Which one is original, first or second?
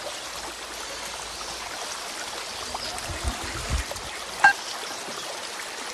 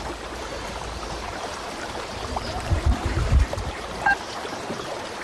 first